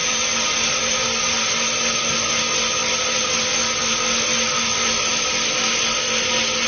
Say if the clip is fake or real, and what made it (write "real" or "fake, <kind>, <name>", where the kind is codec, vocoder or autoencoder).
real